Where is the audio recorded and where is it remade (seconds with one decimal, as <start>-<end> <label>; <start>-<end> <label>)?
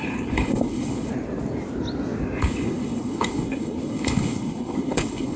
0.0-1.1 remade; 1.1-2.4 recorded; 2.4-5.4 remade